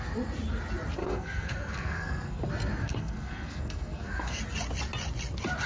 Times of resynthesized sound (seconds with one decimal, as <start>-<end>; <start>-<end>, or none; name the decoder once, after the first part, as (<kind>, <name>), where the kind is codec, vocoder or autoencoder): 1.0-2.4 (codec, SNAC); 2.8-4.4